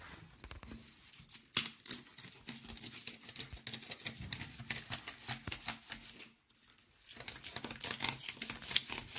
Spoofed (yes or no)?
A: no